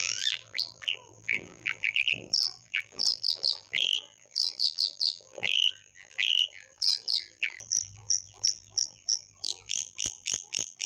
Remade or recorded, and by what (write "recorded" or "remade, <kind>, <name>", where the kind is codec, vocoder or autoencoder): remade, vocoder, BigVGAN v2